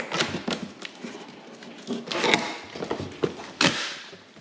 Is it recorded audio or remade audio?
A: recorded